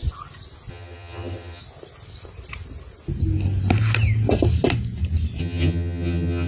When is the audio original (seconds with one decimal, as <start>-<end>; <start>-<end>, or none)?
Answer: 0.0-0.7; 1.6-5.4